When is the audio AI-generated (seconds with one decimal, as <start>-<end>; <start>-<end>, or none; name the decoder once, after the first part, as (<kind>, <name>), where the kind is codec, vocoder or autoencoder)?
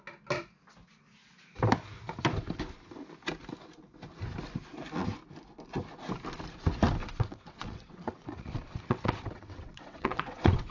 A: 7.0-10.7 (vocoder, WaveNeXt)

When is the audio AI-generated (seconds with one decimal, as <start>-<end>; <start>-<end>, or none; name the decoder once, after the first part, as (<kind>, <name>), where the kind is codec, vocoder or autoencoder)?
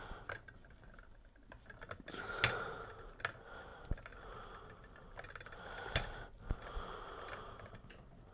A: none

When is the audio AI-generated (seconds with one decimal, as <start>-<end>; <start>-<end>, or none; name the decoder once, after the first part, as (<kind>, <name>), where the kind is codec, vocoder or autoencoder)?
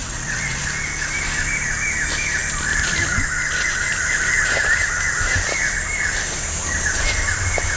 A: 0.0-0.6 (vocoder, WaveNeXt)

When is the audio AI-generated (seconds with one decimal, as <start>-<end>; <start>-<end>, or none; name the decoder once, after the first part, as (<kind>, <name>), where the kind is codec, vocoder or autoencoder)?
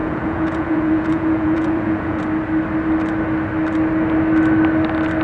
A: 0.0-2.2 (vocoder, Vocos)